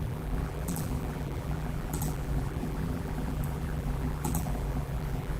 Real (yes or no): no